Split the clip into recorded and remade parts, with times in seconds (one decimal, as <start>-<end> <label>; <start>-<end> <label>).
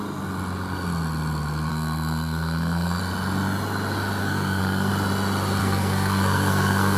0.0-1.7 recorded; 1.7-3.0 remade; 3.0-4.2 recorded; 4.2-4.9 remade; 4.9-5.6 recorded; 5.6-7.0 remade